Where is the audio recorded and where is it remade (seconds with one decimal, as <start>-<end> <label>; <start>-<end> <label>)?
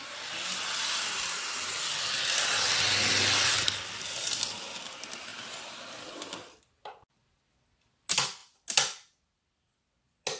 0.0-10.4 recorded